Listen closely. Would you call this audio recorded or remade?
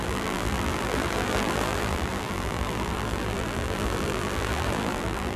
remade